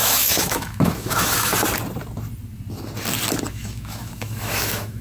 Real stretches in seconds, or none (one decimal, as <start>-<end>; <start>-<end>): 1.5-3.5